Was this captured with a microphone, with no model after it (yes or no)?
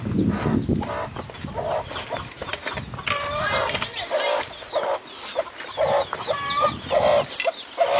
yes